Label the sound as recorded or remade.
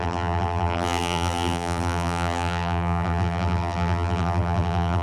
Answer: remade